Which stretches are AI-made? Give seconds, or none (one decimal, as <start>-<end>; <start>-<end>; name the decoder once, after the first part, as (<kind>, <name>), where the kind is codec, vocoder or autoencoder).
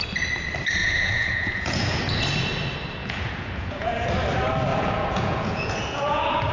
0.8-2.0 (vocoder, Vocos); 3.0-4.1; 4.7-6.5